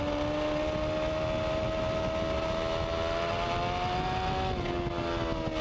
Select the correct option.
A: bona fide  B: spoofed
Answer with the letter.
A